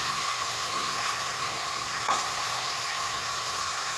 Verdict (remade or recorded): remade